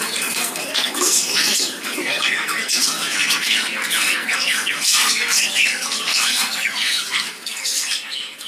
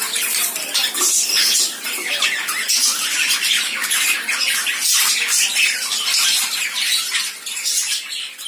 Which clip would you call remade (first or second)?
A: first